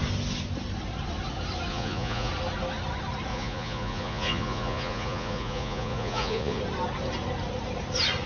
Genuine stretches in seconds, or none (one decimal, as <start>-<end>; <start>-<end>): 0.0-1.7; 2.3-3.3; 6.6-8.3